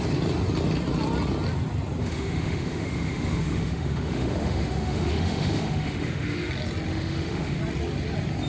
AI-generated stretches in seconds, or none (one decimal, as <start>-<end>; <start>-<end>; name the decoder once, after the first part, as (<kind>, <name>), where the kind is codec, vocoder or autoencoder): 2.0-6.5 (autoencoder, DAC-VAE); 6.9-7.6